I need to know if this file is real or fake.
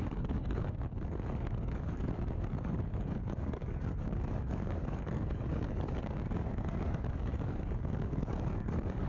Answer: fake